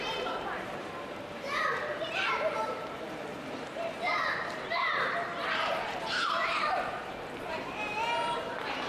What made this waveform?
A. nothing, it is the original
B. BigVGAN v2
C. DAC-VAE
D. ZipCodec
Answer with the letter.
B